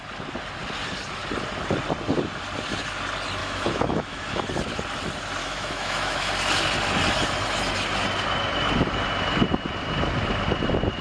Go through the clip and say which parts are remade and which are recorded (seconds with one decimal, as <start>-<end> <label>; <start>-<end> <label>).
0.0-3.4 recorded; 3.4-4.4 remade; 4.4-5.4 recorded; 5.4-6.3 remade; 6.3-11.0 recorded